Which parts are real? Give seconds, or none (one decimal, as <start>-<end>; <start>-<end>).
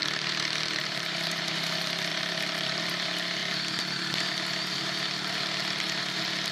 1.5-2.1; 2.8-6.5